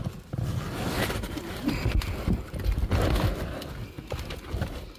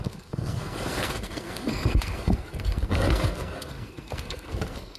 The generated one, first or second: second